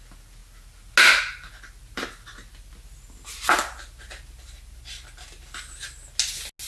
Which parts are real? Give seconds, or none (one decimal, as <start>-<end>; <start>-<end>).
0.0-6.7